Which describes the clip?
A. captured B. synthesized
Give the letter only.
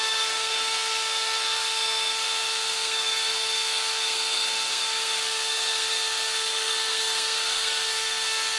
B